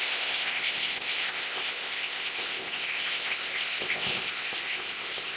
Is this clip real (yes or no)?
no